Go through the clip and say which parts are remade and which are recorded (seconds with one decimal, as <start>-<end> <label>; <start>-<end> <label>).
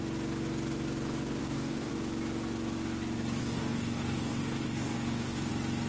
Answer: 0.0-1.4 recorded; 1.4-1.9 remade; 1.9-3.4 recorded; 3.4-5.5 remade; 5.5-5.9 recorded